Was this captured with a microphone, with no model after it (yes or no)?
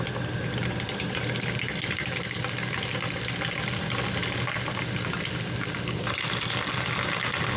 yes